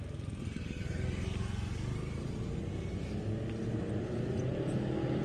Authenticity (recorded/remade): recorded